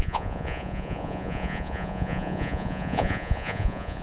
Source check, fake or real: fake